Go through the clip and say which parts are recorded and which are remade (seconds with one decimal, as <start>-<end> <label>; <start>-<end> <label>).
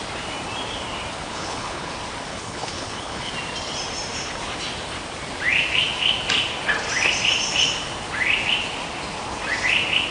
0.0-1.2 recorded; 1.2-1.9 remade; 1.9-2.3 recorded; 2.3-3.3 remade; 3.3-10.1 recorded